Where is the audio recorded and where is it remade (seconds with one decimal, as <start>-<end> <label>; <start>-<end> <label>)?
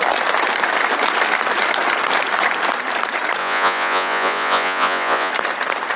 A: 0.0-3.4 recorded; 3.4-5.3 remade; 5.3-6.0 recorded